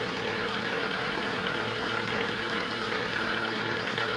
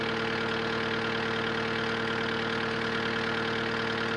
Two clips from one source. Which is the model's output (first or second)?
first